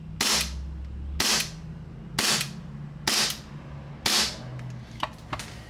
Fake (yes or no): no